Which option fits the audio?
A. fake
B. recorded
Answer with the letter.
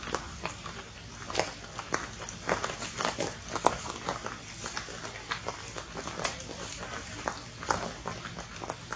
B